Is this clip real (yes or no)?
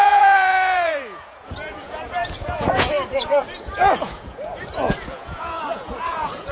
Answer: no